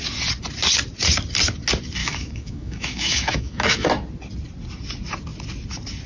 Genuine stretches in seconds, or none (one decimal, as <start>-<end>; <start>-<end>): 0.0-2.0; 3.9-6.1